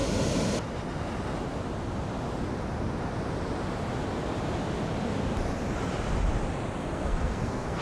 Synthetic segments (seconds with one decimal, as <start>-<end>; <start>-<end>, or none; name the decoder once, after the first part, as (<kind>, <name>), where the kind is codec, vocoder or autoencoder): 6.8-7.8 (codec, SNAC)